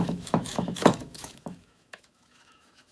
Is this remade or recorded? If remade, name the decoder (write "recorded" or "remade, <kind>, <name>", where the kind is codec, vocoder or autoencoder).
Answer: remade, autoencoder, DAC-VAE